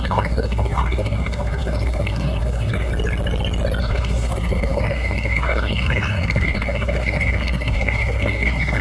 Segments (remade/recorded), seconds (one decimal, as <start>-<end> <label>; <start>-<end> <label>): 0.0-2.9 remade; 2.9-3.8 recorded; 3.8-8.8 remade